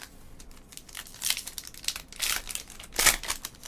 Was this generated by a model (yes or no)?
no